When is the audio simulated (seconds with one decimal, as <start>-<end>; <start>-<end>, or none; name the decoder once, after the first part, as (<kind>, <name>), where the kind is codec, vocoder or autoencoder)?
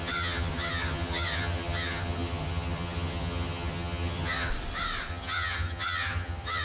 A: 0.0-4.5 (vocoder, HiFi-GAN); 5.1-6.6